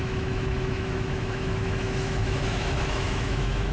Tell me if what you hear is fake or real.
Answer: fake